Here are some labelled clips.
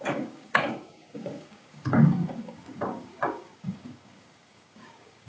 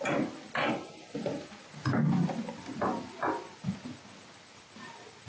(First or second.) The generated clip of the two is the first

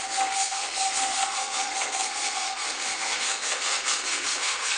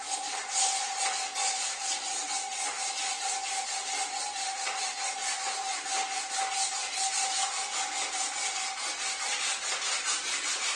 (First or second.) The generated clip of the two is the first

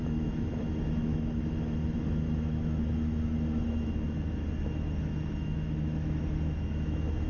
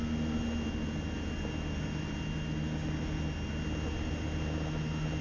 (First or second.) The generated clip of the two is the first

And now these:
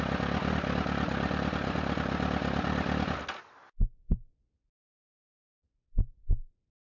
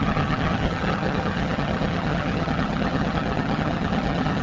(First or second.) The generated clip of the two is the second